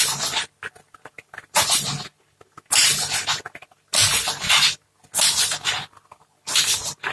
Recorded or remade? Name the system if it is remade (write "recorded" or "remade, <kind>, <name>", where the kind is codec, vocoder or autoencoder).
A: recorded